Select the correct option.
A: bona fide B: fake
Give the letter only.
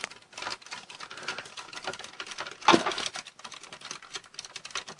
A